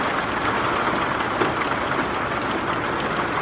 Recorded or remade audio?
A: recorded